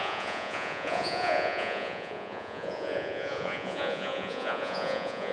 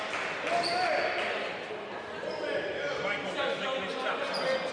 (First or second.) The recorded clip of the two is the second